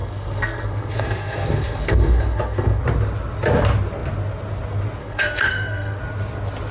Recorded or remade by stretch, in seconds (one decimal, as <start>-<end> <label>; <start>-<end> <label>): 0.0-2.8 remade; 2.8-5.0 recorded; 5.0-6.0 remade; 6.0-6.7 recorded